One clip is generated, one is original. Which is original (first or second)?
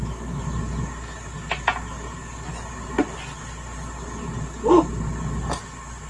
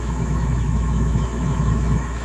first